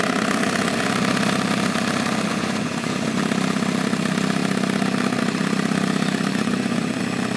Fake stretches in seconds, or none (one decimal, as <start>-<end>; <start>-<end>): 2.3-3.2; 6.3-7.0